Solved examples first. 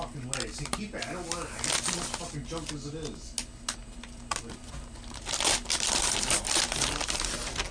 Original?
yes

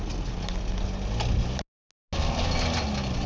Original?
yes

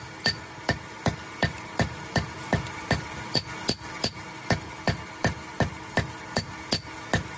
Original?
yes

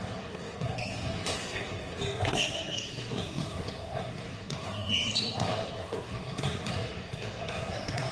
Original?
no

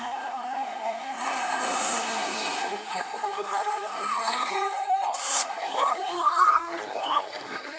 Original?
no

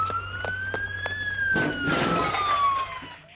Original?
yes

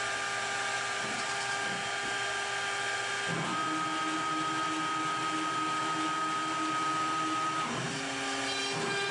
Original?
yes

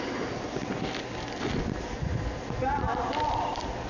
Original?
yes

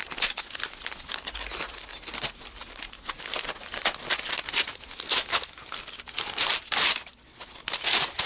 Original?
yes